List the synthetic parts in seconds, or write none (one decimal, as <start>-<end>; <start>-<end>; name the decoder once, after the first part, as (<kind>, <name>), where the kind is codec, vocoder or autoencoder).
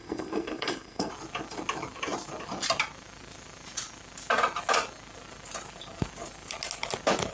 0.0-1.1 (codec, SNAC)